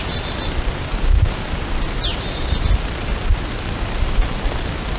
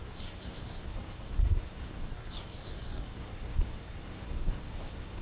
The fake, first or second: second